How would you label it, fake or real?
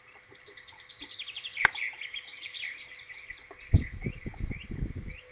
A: real